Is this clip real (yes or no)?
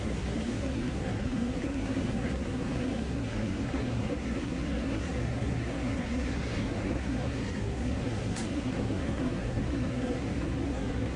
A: no